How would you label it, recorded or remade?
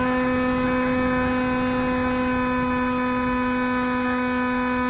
recorded